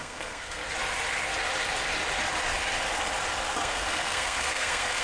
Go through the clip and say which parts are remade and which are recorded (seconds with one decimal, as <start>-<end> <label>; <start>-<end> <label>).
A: 0.0-0.6 remade; 0.6-3.6 recorded; 3.6-5.0 remade